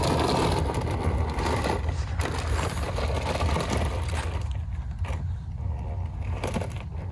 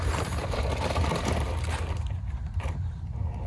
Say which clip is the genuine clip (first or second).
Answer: first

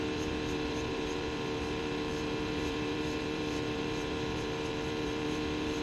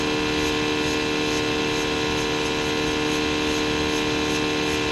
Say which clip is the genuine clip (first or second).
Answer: second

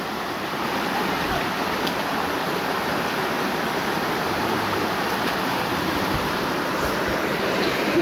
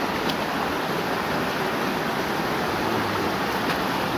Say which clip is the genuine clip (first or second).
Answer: second